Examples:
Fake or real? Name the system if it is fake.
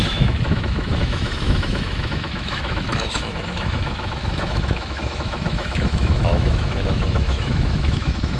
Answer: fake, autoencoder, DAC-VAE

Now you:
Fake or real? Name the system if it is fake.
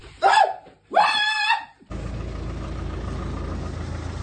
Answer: real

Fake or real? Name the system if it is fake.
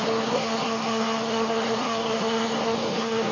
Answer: fake, codec, SNAC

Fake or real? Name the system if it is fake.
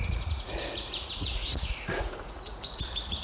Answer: fake, vocoder, Vocos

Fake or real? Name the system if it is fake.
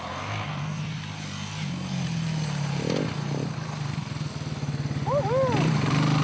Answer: real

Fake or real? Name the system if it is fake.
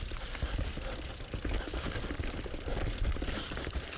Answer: real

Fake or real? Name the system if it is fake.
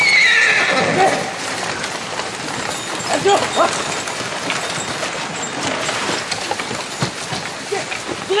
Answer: real